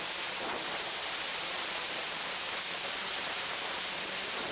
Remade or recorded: remade